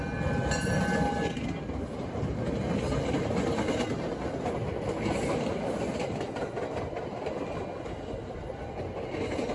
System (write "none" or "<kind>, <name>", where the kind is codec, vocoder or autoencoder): none